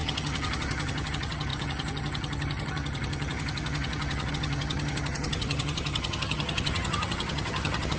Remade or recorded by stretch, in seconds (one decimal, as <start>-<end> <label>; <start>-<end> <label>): 0.0-8.0 remade